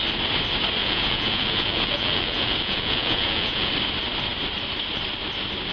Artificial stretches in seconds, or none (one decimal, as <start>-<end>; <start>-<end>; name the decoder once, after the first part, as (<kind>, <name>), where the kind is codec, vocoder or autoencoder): 0.8-3.7 (vocoder, Vocos)